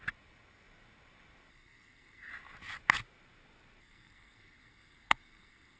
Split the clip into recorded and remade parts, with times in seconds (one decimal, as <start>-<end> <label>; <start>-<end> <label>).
0.0-1.5 recorded; 1.5-2.3 remade; 2.3-3.8 recorded; 3.8-5.8 remade